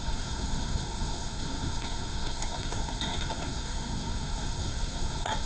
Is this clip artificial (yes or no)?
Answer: yes